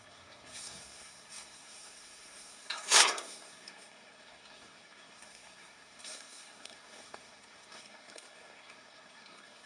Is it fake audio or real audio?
fake